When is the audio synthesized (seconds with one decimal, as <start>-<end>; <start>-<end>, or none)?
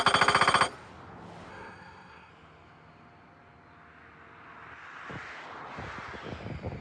1.5-2.3